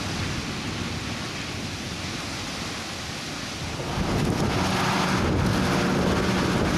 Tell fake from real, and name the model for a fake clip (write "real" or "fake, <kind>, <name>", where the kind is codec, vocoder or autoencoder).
real